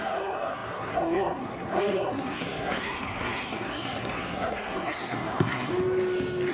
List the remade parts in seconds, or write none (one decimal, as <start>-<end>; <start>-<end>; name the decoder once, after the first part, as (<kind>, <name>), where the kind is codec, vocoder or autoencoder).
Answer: 0.0-5.7 (codec, SNAC)

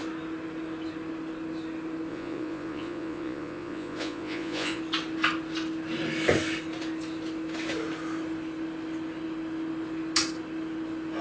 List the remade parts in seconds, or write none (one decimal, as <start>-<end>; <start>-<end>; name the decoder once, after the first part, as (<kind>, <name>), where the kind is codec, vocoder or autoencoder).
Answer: 2.1-4.8 (vocoder, Vocos)

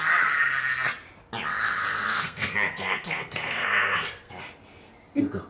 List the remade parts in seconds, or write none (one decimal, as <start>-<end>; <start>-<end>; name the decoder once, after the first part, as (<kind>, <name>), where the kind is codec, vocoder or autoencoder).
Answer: 1.8-4.3 (codec, SNAC)

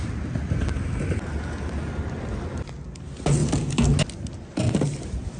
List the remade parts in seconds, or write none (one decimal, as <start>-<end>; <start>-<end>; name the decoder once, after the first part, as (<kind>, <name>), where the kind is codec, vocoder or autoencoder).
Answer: none

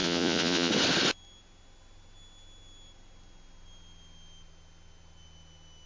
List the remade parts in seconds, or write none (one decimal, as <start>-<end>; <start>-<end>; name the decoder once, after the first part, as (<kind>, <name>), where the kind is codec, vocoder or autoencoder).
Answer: 0.0-0.7 (vocoder, Vocos)